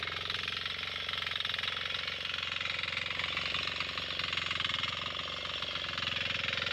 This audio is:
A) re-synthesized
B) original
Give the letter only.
B